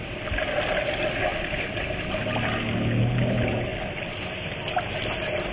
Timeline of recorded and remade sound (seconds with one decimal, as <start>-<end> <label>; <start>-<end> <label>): 0.0-5.5 recorded